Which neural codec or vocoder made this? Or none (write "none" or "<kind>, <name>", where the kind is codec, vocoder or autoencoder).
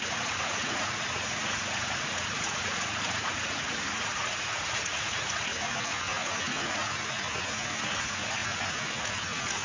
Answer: vocoder, Vocos